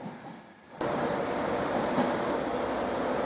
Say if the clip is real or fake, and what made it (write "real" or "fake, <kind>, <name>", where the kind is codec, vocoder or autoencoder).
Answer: real